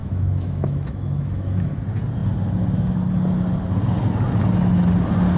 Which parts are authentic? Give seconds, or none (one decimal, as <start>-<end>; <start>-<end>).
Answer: 1.8-5.4